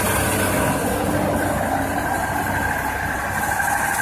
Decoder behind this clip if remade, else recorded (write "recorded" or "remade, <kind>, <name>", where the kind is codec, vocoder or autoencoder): recorded